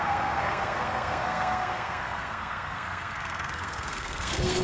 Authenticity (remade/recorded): remade